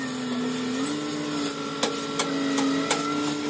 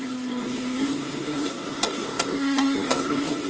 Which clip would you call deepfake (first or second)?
second